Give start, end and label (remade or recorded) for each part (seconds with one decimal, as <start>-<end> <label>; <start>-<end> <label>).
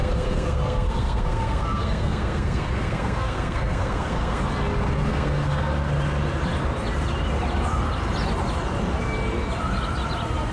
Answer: 0.0-4.4 remade; 4.4-5.1 recorded; 5.1-5.6 remade; 5.6-10.5 recorded